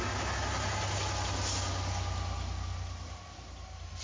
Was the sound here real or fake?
real